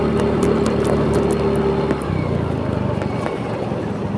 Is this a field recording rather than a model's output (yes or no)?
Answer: yes